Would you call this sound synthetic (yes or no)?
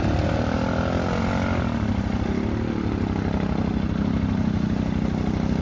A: no